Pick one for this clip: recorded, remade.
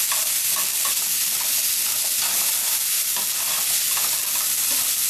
recorded